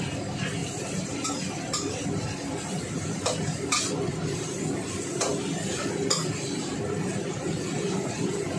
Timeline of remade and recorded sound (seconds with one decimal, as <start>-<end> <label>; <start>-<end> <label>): 0.0-8.6 recorded